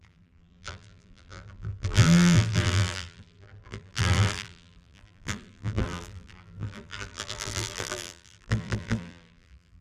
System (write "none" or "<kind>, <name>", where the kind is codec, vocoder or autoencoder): vocoder, BigVGAN v2